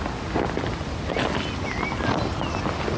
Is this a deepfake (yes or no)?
no